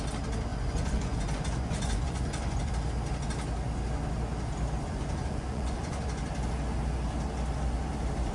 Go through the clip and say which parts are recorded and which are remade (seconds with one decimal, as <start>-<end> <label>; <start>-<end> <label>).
0.0-0.5 recorded; 0.5-2.7 remade; 2.7-4.8 recorded; 4.8-6.2 remade; 6.2-8.3 recorded